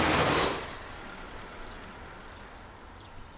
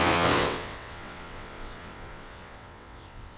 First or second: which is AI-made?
second